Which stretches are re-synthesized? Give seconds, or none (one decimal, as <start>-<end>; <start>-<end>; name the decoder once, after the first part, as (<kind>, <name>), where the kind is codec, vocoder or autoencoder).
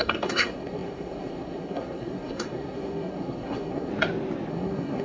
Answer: 0.0-3.9 (codec, SNAC); 4.5-5.0